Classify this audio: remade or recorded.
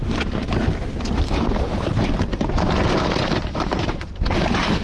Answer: remade